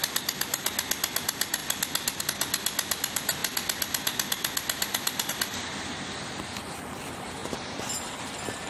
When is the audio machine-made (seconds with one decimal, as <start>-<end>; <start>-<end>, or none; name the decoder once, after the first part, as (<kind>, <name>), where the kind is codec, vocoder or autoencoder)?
none